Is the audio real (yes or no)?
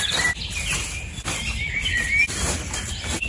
yes